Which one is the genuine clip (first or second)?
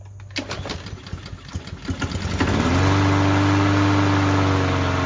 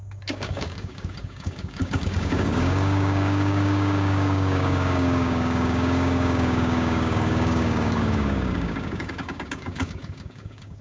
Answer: first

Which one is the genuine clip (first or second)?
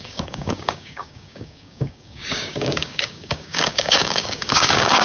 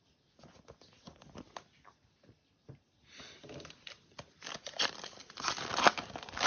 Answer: second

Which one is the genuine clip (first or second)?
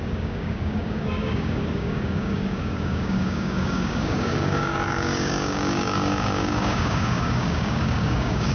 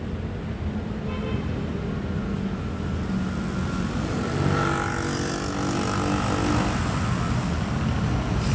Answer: second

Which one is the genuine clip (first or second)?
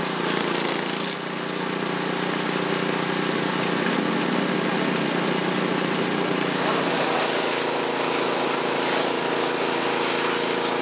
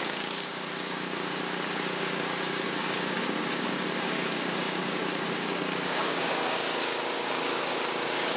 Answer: first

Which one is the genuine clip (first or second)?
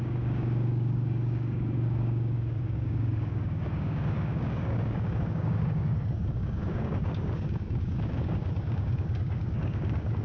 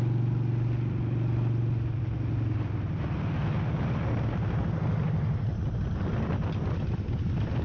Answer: second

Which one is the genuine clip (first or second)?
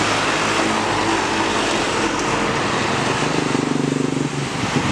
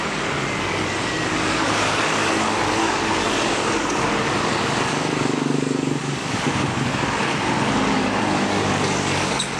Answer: first